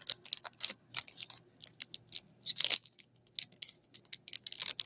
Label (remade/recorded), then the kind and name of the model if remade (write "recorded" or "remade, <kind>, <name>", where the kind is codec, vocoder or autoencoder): recorded